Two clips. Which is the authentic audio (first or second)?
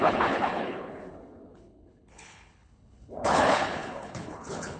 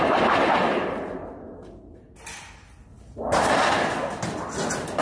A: second